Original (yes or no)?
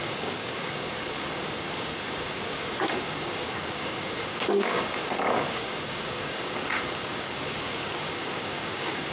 no